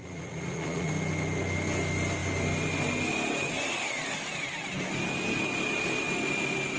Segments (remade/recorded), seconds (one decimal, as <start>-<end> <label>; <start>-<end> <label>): 0.0-0.9 remade; 0.9-6.8 recorded

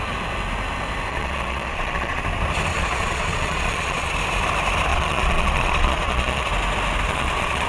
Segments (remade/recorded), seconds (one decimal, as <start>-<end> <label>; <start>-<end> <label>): 0.0-1.1 recorded; 1.1-2.2 remade; 2.2-2.7 recorded; 2.7-4.1 remade; 4.1-4.9 recorded; 4.9-6.5 remade; 6.5-7.1 recorded; 7.1-7.7 remade

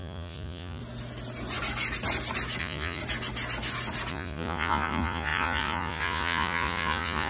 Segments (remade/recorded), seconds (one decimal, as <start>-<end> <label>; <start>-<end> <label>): 0.0-0.8 remade; 0.8-2.6 recorded; 2.6-3.0 remade; 3.0-4.1 recorded; 4.1-7.3 remade

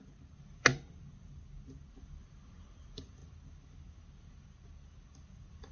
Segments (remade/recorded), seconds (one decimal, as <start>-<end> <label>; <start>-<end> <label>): 0.0-5.7 recorded

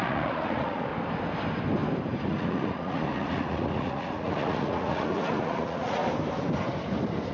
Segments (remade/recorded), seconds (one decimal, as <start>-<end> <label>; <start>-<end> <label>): 0.0-0.9 remade; 0.9-2.3 recorded; 2.3-6.0 remade; 6.0-7.3 recorded

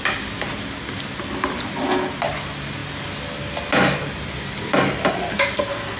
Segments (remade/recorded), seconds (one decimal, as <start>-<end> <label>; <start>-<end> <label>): 0.0-6.0 recorded

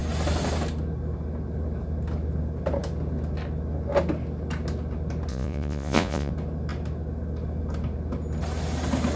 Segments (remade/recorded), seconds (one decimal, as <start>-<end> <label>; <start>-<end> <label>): 0.0-5.3 recorded; 5.3-6.3 remade; 6.3-9.2 recorded